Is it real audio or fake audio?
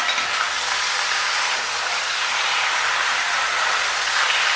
real